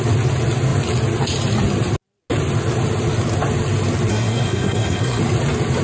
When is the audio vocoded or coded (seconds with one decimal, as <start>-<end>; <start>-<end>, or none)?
4.1-5.2